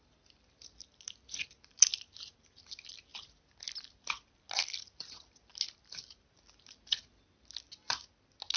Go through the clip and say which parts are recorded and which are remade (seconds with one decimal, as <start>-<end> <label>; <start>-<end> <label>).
0.0-8.6 recorded